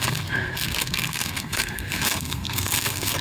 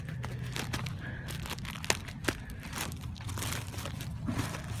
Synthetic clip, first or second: first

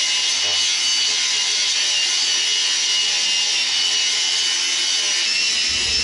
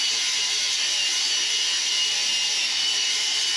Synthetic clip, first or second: second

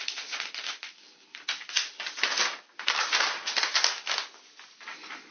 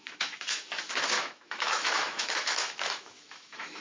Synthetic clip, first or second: second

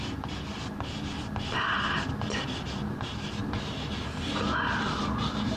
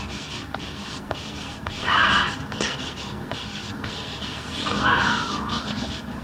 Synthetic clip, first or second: second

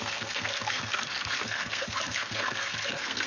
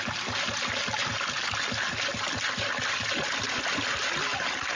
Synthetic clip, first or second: first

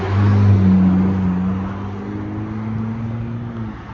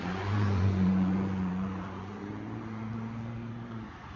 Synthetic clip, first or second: second